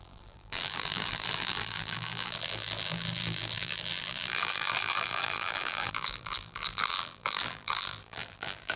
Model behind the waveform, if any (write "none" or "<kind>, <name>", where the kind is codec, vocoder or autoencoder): vocoder, BigVGAN v2